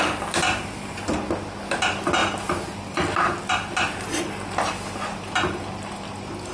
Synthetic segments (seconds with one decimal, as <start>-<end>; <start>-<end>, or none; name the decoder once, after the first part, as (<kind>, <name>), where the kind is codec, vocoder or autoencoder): none